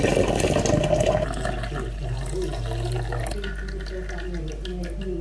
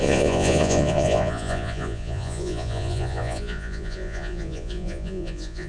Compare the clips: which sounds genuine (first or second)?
first